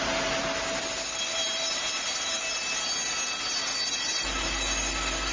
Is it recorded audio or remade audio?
recorded